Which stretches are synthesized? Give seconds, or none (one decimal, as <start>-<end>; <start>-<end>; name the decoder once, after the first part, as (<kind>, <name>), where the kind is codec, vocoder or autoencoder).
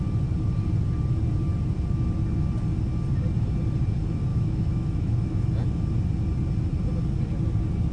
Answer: 4.3-5.4 (autoencoder, DAC-VAE)